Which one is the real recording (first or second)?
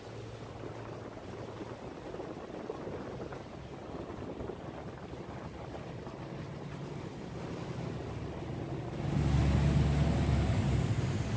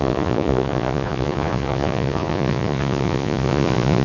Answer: first